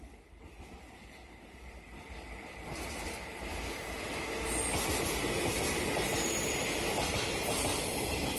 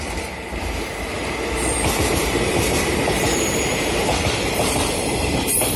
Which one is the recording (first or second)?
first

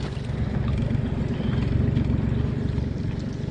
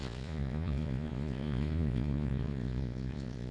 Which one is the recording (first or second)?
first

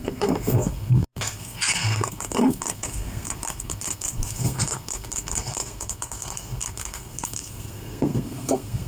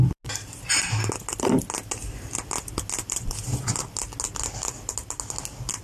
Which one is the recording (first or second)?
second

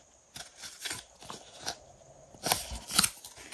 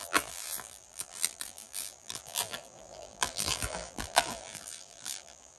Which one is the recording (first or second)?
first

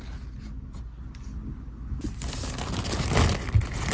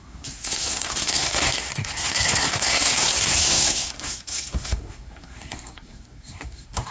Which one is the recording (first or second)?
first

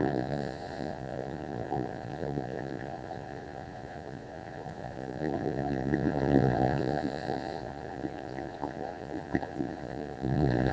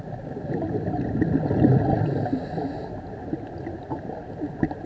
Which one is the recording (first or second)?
second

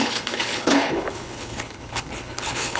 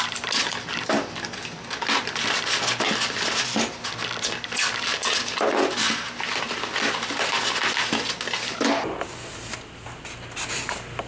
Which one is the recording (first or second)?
second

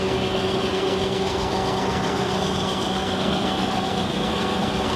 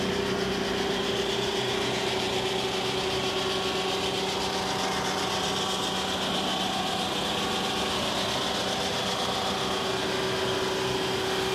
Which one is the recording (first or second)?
second